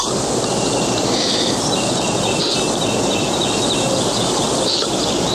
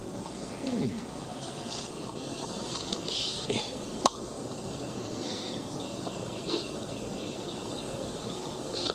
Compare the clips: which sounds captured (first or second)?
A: first